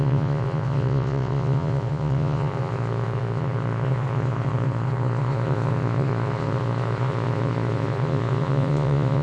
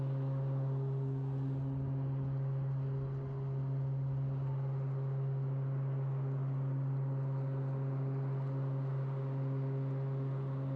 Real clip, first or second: second